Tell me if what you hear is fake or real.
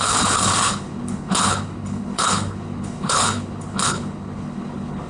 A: fake